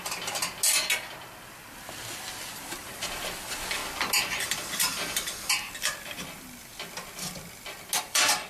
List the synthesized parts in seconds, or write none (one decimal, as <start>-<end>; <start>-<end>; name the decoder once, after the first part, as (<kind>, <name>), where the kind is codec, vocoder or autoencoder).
0.0-0.4 (vocoder, BigVGAN v2); 2.3-3.8; 8.0-8.5